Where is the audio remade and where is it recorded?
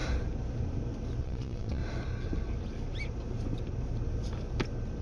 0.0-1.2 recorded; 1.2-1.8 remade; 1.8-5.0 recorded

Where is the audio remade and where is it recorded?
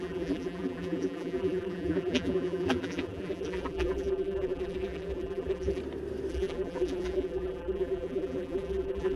0.0-5.8 remade; 5.8-6.3 recorded; 6.3-9.2 remade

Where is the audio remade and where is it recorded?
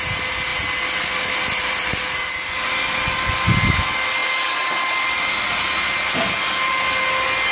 0.0-7.5 recorded